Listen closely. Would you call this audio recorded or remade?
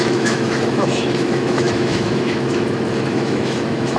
remade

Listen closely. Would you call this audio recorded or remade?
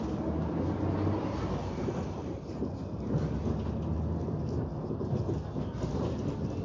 recorded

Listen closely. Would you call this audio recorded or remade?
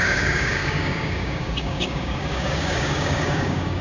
remade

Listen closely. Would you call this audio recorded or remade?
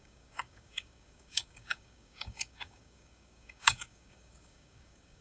remade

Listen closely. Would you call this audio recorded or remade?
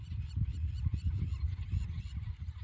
recorded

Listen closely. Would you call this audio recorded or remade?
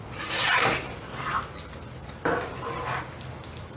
recorded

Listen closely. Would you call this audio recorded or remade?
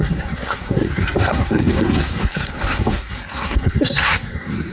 remade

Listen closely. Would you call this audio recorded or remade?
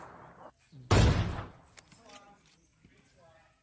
recorded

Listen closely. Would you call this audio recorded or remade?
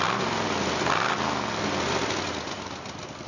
recorded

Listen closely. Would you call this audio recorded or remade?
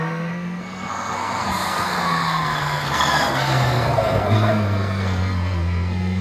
remade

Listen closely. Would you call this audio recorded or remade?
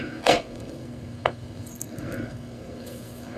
remade